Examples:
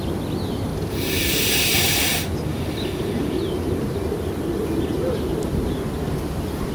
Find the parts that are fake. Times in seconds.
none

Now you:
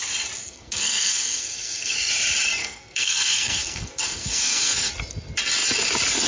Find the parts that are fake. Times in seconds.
0.4-2.1 (codec, SNAC); 2.6-4.9

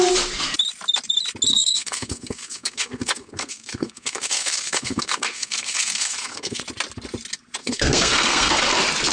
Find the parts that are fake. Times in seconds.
1.5-6.6 (codec, SNAC); 7.6-8.6

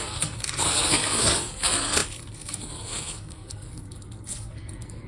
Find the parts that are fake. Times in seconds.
0.0-5.1 (codec, SNAC)